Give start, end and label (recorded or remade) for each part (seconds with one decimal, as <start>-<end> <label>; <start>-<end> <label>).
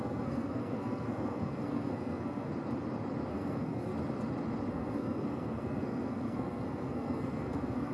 0.0-2.5 remade; 2.5-3.3 recorded; 3.3-3.9 remade; 3.9-4.7 recorded; 4.7-7.9 remade